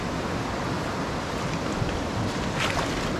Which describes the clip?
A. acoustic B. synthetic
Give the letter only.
A